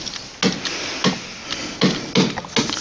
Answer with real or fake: real